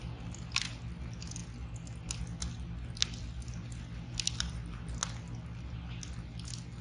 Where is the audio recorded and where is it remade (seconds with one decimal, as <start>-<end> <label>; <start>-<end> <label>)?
0.0-6.8 recorded